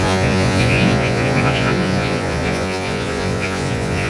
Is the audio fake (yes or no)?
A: yes